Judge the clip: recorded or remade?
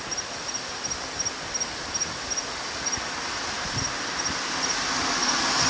recorded